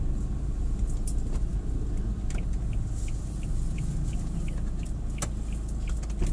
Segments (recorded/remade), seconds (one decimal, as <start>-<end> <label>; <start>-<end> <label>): 0.0-6.3 recorded